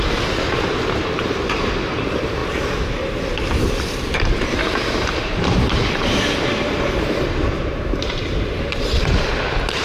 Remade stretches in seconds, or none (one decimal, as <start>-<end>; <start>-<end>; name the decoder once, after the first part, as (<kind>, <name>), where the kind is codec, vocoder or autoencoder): 0.0-2.4 (vocoder, BigVGAN v2); 3.7-9.8